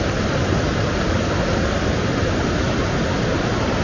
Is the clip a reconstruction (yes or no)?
no